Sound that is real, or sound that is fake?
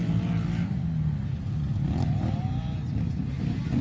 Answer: real